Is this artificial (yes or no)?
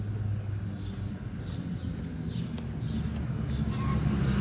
no